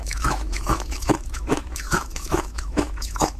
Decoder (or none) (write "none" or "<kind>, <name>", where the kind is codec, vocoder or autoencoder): autoencoder, DAC-VAE